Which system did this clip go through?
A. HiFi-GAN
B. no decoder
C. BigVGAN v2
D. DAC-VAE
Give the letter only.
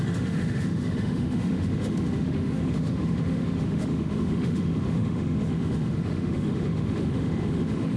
D